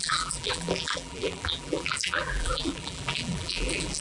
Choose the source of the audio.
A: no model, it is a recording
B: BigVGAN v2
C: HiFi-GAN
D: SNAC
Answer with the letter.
B